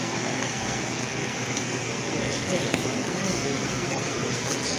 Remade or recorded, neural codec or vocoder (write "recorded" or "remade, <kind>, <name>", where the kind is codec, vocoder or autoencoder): remade, codec, SNAC